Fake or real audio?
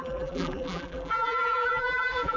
fake